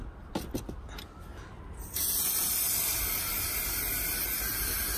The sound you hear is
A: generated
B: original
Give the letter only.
B